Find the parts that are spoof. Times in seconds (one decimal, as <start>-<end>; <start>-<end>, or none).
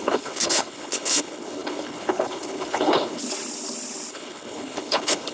0.0-3.2; 4.1-5.3